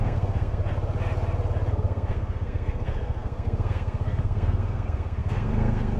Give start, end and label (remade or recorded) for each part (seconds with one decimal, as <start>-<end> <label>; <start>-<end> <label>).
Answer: 0.0-0.6 remade; 0.6-1.7 recorded; 1.7-6.0 remade